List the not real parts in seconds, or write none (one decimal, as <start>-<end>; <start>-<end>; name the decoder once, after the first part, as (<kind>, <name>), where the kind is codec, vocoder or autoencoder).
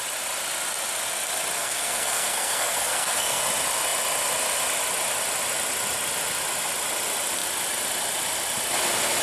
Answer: 1.6-3.4 (codec, SNAC)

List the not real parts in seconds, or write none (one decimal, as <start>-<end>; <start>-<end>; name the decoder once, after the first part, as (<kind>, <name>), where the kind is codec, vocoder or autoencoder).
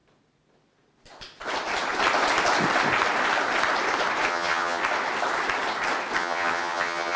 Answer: 4.3-4.8 (vocoder, HiFi-GAN); 6.2-7.2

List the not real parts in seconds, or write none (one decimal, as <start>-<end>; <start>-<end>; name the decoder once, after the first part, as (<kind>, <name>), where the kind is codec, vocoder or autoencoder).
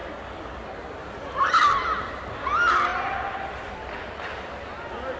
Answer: none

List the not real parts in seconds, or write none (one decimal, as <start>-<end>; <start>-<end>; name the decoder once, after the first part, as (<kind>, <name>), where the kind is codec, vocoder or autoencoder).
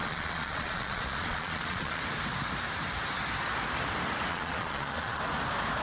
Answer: 0.0-2.0 (vocoder, Vocos); 4.3-5.2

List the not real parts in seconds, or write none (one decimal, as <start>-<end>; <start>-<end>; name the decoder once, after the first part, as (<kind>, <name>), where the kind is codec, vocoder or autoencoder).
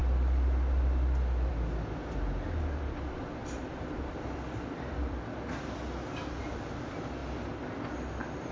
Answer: 3.4-5.2 (vocoder, BigVGAN v2)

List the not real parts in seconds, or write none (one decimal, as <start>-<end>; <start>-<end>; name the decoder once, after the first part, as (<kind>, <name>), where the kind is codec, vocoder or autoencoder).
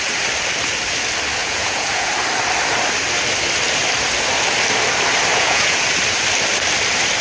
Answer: 1.4-2.1 (vocoder, Vocos); 5.3-5.8